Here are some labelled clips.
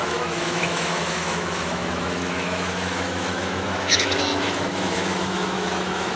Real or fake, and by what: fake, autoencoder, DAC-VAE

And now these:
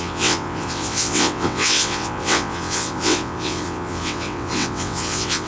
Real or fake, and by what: fake, vocoder, WaveNeXt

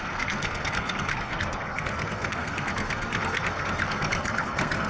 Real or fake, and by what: fake, codec, SNAC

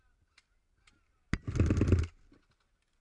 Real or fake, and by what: real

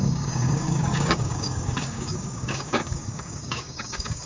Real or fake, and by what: fake, codec, DAC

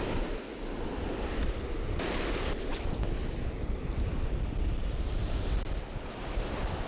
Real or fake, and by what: real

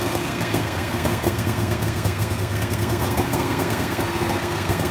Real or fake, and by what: fake, codec, SNAC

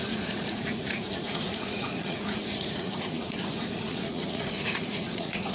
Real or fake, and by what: fake, vocoder, Vocos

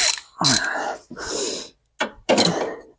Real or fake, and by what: real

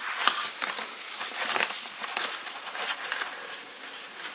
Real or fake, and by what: fake, vocoder, BigVGAN v2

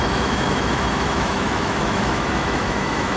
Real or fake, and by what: fake, autoencoder, DAC-VAE